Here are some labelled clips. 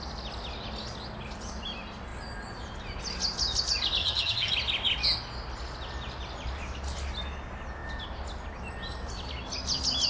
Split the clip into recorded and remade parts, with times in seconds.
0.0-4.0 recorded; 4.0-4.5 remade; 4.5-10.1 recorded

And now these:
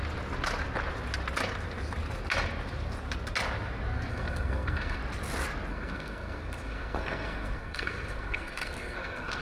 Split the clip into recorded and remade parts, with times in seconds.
0.0-4.1 recorded; 4.1-5.0 remade; 5.0-5.7 recorded; 5.7-9.4 remade

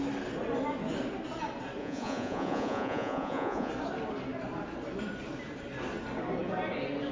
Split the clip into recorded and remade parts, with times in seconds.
0.0-1.8 recorded; 1.8-3.7 remade; 3.7-7.1 recorded

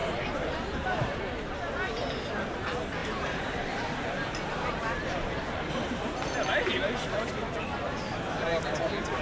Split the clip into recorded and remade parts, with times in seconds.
0.0-1.2 remade; 1.2-3.0 recorded; 3.0-5.7 remade; 5.7-9.2 recorded

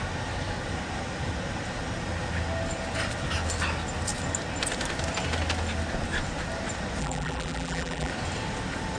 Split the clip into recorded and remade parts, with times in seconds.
0.0-7.0 recorded; 7.0-8.1 remade; 8.1-9.0 recorded